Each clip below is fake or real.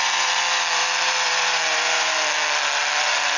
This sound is fake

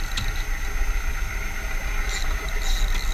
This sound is real